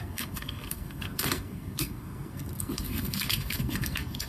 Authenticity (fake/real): fake